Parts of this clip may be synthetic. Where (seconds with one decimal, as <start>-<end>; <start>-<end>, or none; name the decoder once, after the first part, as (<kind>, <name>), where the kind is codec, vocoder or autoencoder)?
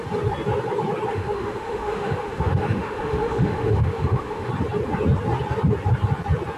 1.1-4.5 (autoencoder, DAC-VAE)